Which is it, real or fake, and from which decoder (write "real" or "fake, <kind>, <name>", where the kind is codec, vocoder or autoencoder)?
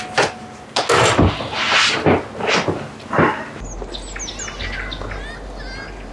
real